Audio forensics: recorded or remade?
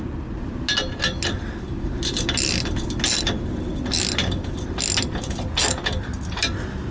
recorded